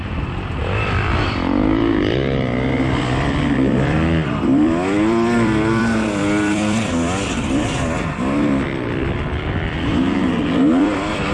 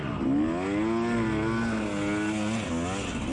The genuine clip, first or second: second